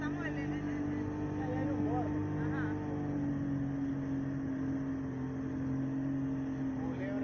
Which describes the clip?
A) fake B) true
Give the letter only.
B